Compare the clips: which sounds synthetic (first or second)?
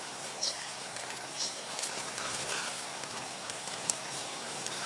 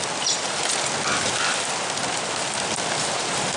first